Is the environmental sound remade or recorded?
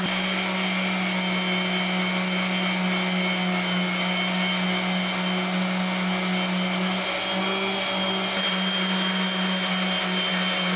recorded